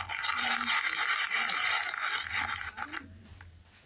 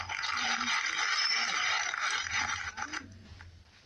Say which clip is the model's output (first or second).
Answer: second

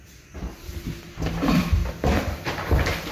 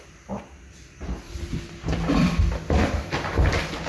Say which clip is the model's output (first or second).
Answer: first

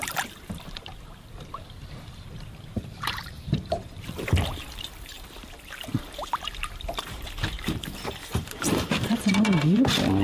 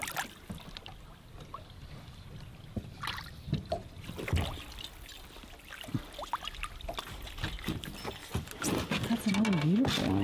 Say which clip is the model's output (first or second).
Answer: first